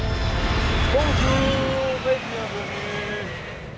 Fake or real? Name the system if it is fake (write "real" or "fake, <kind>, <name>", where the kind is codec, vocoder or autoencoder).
real